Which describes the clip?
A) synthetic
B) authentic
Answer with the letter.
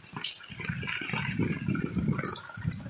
B